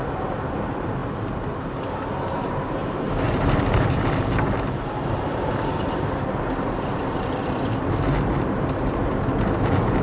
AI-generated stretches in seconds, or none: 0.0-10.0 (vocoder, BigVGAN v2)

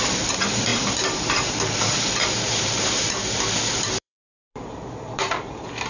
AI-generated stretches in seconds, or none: 0.0-5.9 (vocoder, BigVGAN v2)

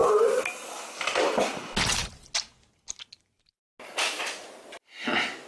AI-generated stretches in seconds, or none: none

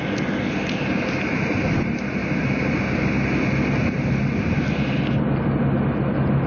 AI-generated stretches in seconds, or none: none

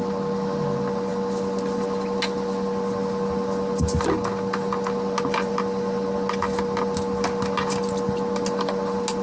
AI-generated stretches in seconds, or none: none

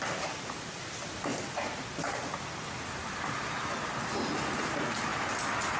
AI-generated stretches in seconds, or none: none

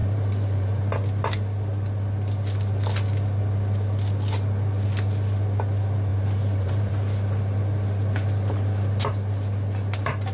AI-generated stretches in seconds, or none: 0.0-0.8 (vocoder, BigVGAN v2); 6.1-6.9